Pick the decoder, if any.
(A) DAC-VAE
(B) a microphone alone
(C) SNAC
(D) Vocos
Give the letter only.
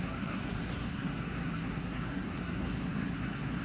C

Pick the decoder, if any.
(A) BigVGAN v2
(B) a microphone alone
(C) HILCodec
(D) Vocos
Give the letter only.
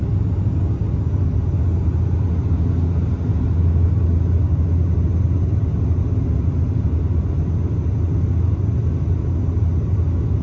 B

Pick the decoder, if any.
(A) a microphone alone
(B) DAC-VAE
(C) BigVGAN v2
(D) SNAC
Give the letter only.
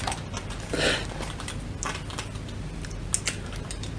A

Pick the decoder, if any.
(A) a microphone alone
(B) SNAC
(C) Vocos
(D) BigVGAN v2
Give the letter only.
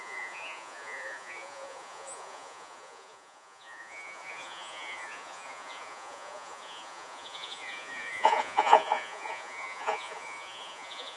C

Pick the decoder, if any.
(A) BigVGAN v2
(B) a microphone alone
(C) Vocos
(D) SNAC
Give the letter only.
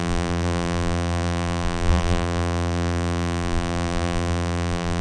A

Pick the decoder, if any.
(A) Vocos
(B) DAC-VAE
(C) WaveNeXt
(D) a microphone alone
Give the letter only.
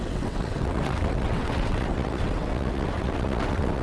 C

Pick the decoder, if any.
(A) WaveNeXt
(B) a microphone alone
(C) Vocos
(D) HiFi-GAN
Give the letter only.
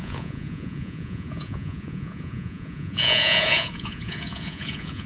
C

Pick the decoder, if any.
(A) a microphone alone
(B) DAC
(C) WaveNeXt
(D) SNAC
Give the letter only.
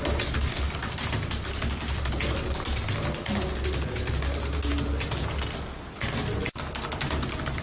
A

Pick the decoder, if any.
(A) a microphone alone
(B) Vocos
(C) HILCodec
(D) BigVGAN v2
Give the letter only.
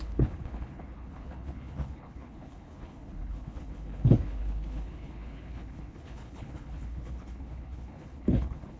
C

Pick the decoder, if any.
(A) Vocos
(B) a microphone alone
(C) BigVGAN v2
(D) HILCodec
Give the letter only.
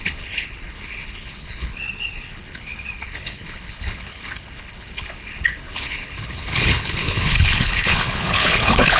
D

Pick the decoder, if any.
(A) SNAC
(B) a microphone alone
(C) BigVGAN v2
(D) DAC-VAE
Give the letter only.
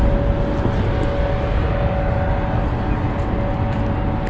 B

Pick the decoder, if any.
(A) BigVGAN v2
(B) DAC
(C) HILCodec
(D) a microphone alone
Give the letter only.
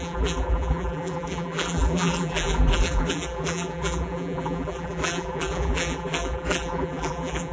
A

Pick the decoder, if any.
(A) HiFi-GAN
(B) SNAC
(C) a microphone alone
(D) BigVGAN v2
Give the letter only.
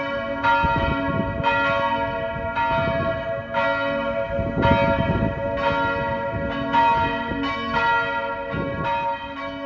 C